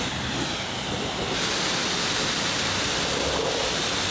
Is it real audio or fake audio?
real